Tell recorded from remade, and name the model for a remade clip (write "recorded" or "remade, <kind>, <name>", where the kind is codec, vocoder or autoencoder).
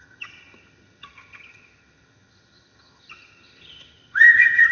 remade, vocoder, HiFi-GAN